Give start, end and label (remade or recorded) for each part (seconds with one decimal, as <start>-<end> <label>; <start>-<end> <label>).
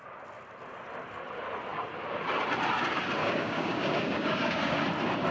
0.0-3.2 recorded; 3.2-4.8 remade; 4.8-5.3 recorded